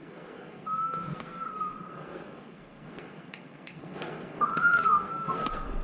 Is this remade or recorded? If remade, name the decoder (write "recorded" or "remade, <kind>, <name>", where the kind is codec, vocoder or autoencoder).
remade, codec, SNAC